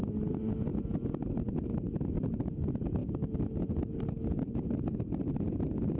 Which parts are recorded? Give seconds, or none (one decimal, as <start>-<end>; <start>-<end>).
0.0-6.0